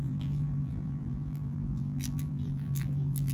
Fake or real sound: fake